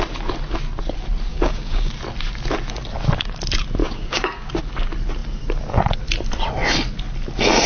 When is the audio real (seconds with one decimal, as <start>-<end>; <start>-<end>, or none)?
0.0-1.3; 1.9-3.8; 4.6-7.7